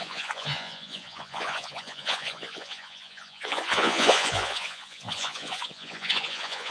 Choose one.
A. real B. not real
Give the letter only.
B